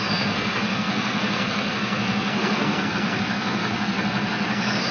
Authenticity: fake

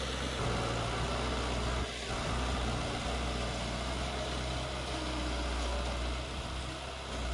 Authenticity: real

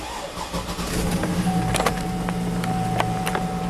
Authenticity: real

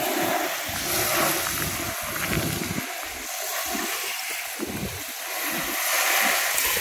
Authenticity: real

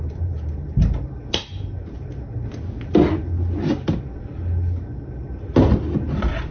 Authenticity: real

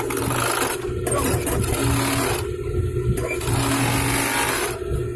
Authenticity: real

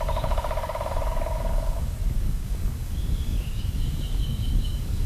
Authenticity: fake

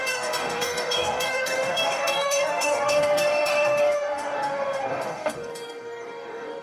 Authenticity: fake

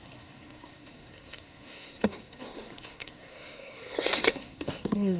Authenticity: fake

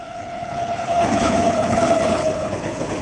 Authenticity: fake